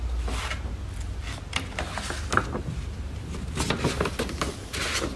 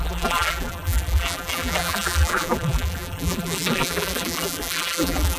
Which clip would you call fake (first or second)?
second